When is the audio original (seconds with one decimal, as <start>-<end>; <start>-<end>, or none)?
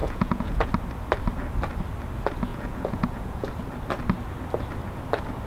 0.7-2.5; 3.5-5.5